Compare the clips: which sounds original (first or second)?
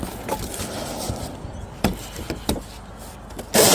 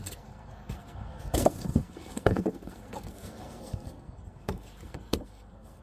first